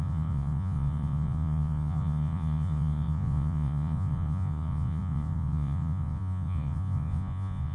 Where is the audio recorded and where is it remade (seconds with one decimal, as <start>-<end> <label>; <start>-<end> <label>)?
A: 0.0-7.7 remade